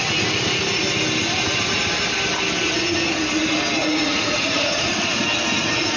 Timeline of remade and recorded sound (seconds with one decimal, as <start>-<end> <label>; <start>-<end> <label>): 0.0-3.8 recorded; 3.8-5.2 remade; 5.2-6.0 recorded